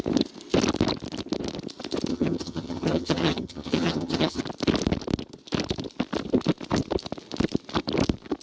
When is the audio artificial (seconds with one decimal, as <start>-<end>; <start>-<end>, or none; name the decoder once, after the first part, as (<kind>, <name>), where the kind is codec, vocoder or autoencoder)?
2.1-4.4 (vocoder, HiFi-GAN)